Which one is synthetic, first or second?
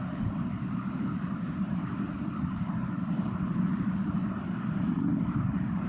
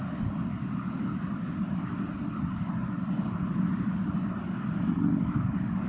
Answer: first